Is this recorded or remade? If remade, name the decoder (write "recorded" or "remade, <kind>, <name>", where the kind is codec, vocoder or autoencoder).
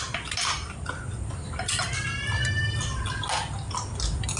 recorded